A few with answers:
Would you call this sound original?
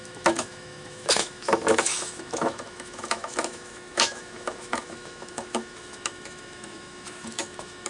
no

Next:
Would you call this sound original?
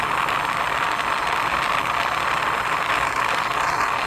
yes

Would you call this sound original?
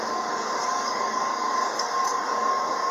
no